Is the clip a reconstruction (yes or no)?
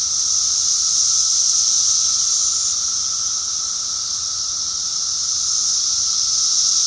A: no